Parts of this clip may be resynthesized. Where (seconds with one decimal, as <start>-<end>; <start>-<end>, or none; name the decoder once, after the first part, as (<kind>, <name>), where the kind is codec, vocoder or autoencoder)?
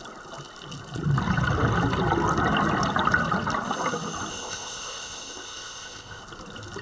4.3-6.2 (codec, ZipCodec)